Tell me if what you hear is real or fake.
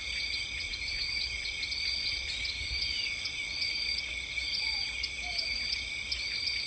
real